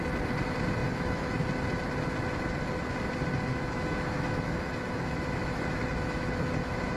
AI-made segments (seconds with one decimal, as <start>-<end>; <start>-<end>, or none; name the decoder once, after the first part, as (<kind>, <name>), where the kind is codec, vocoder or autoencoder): 0.8-1.4 (autoencoder, DAC-VAE); 3.5-7.0